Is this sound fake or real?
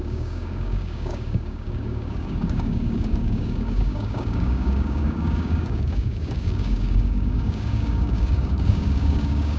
fake